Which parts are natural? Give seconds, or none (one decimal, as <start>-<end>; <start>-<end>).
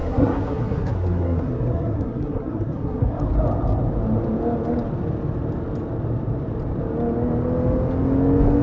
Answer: 3.2-8.6